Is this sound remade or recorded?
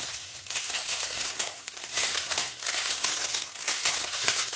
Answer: remade